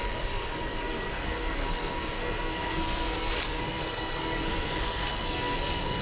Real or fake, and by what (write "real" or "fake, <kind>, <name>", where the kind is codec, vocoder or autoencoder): fake, codec, SNAC